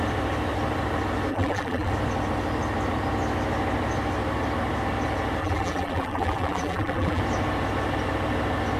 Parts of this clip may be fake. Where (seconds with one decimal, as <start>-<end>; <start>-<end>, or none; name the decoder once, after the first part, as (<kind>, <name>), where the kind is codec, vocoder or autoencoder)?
1.3-1.9 (vocoder, BigVGAN v2); 5.4-7.2